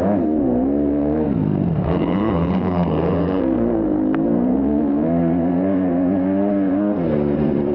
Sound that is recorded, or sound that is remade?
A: remade